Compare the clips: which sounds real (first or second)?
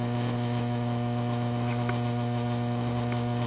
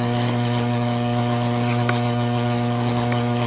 first